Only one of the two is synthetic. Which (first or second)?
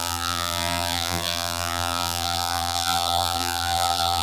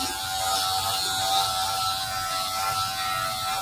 first